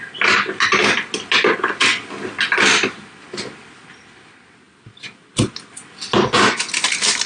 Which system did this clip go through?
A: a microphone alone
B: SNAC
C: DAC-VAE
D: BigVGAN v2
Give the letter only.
A